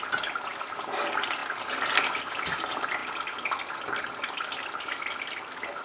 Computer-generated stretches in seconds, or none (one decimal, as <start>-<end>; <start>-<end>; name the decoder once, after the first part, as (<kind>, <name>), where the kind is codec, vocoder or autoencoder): none